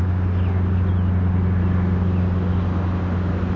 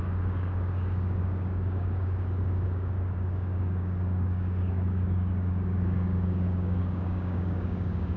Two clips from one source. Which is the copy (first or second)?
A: second